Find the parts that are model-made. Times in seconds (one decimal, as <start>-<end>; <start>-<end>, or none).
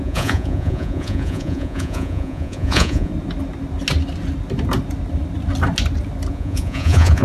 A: 0.0-3.1; 6.3-7.2